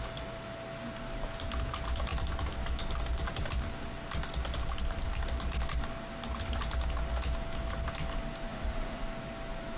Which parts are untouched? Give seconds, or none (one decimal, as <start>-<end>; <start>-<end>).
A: 0.0-8.5; 9.0-9.8